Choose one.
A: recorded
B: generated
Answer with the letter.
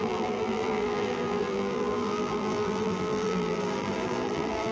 B